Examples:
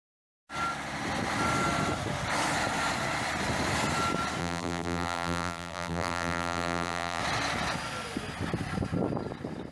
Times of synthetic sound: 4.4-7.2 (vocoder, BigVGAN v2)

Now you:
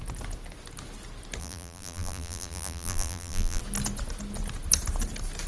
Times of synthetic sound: 1.4-3.6 (vocoder, BigVGAN v2)

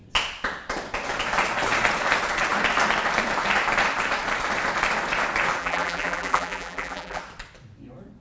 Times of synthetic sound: 5.6-7.2 (vocoder, BigVGAN v2)